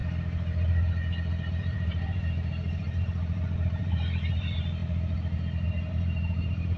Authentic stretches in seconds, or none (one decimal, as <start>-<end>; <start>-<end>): 0.0-1.5; 4.8-5.9